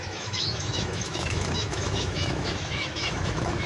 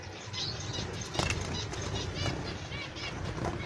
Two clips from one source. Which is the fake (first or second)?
first